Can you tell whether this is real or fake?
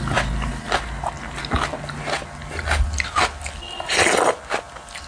real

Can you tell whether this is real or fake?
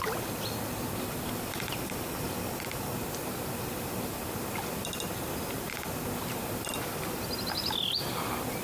real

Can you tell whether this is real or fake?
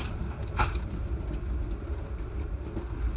real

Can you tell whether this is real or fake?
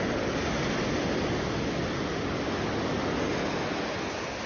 real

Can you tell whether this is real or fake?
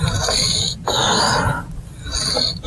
real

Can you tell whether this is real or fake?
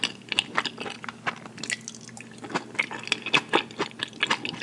real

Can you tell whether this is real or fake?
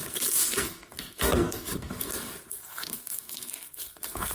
fake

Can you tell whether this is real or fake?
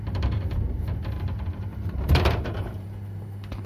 fake